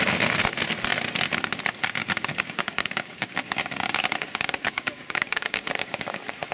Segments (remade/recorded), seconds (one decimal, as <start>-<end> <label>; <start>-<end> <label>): 0.0-2.3 recorded; 2.3-6.5 remade